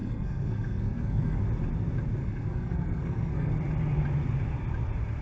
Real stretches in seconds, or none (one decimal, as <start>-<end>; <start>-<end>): 1.4-2.2; 3.5-5.2